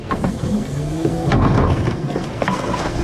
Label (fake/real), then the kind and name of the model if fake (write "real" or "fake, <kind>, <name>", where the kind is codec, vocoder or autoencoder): fake, codec, SNAC